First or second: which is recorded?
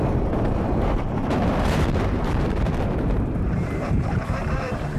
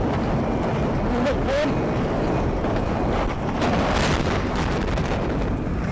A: second